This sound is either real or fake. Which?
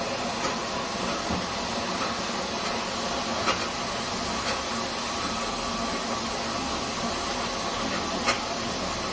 real